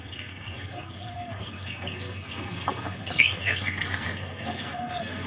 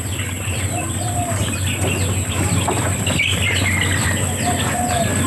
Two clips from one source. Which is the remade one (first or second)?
first